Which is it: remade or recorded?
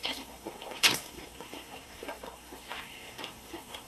remade